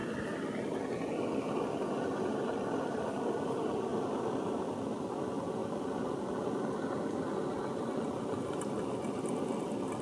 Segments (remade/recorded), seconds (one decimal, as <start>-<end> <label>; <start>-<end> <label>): 0.0-10.0 recorded